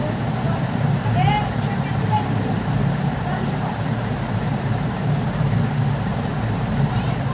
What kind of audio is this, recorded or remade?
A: remade